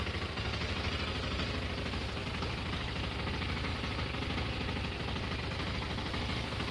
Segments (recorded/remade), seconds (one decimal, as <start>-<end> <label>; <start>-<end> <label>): 0.0-3.7 recorded; 3.7-5.4 remade; 5.4-6.7 recorded